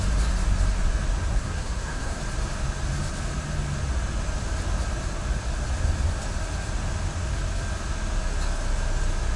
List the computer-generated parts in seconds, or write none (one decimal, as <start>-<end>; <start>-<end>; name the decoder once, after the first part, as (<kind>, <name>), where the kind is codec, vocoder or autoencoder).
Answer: 1.3-2.2 (codec, SNAC)

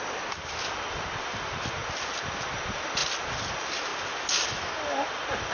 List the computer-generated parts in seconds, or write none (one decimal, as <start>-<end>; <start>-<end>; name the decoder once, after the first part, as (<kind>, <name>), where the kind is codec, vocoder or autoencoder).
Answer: none

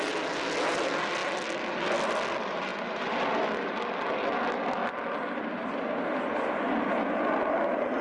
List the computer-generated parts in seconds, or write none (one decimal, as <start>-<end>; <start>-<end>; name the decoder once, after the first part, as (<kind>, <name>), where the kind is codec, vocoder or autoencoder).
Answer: none

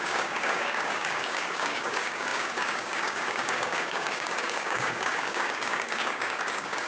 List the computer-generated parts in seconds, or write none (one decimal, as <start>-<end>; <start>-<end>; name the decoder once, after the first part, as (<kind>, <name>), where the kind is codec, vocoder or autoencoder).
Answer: 0.0-6.9 (codec, DAC)

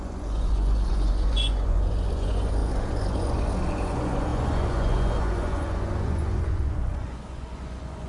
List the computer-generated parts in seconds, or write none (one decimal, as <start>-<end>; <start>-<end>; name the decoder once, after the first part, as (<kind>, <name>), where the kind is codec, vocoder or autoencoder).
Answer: 0.0-8.1 (vocoder, Vocos)

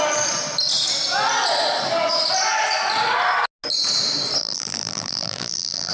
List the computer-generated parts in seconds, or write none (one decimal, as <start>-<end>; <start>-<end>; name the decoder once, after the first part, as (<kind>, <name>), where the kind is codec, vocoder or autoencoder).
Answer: 4.4-5.9 (vocoder, BigVGAN v2)